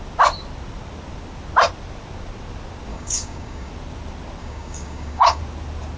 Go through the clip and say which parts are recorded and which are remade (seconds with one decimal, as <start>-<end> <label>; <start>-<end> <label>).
0.0-2.9 recorded; 2.9-3.7 remade; 3.7-4.4 recorded; 4.4-5.4 remade; 5.4-6.0 recorded